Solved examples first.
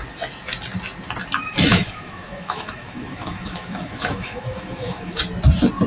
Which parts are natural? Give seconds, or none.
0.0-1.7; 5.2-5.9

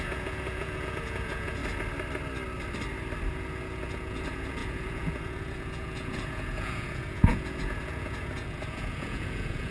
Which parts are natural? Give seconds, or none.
1.6-3.3